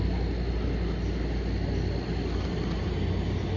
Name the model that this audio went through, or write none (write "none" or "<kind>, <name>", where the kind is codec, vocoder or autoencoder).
none